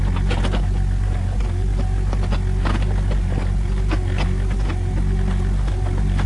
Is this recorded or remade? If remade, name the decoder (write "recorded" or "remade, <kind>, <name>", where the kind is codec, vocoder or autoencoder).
recorded